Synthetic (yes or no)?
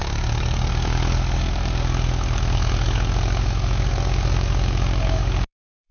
yes